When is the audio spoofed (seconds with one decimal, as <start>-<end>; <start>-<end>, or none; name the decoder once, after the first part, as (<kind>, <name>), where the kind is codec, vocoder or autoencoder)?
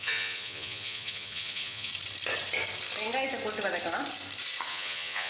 0.0-1.9 (vocoder, Vocos); 4.7-5.3